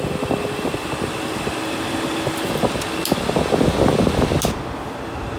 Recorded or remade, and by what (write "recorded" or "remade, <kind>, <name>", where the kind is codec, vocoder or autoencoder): recorded